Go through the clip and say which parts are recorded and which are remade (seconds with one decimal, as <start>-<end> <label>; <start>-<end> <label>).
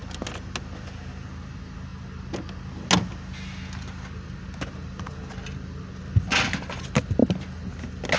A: 0.0-8.2 recorded